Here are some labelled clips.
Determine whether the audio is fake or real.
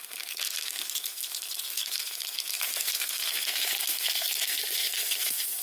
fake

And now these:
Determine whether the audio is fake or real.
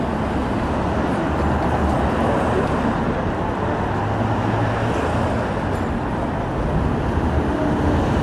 real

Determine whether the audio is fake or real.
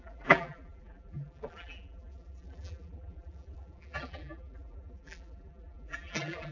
fake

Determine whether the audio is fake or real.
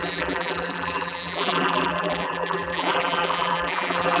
fake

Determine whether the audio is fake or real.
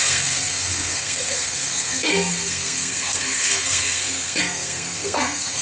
fake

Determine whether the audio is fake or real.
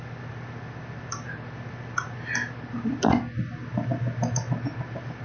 real